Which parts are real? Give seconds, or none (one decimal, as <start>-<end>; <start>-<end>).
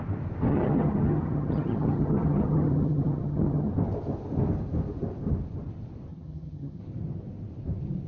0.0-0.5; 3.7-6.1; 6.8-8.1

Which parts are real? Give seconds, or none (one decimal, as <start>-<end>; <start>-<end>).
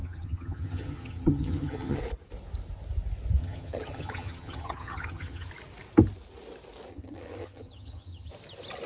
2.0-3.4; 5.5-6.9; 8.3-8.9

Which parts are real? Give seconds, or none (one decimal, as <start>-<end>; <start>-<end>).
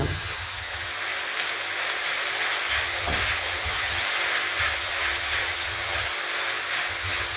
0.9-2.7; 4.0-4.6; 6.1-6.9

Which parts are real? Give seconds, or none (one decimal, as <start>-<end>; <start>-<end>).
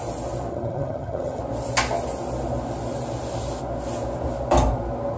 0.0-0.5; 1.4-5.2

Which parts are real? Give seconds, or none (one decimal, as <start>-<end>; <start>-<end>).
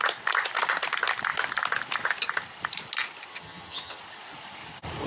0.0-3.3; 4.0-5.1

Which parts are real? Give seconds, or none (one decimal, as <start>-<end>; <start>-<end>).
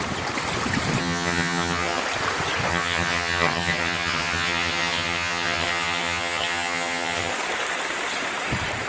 0.0-1.0; 2.0-2.7; 7.3-8.9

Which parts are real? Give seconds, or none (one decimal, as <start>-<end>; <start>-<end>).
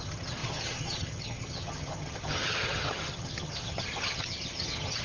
none